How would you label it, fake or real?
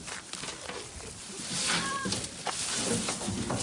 real